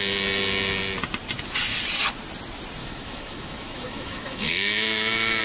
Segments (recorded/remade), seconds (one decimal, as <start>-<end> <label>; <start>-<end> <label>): 0.0-2.8 recorded; 2.8-5.4 remade